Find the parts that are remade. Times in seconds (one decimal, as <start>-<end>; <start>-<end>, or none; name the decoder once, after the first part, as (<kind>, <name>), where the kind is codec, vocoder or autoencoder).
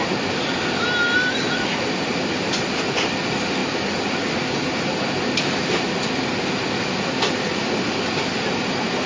none